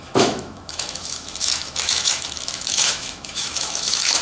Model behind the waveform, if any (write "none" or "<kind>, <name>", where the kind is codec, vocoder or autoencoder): autoencoder, DAC-VAE